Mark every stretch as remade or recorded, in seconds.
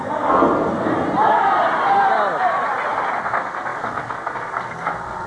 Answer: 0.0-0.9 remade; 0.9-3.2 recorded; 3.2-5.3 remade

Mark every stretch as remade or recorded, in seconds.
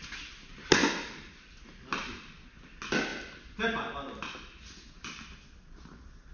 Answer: 0.0-6.3 recorded